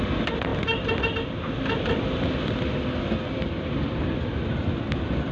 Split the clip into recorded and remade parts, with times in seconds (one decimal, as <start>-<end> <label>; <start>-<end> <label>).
0.0-5.3 recorded